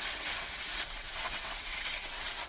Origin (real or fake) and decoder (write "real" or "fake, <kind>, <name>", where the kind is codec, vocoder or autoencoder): fake, vocoder, WaveNeXt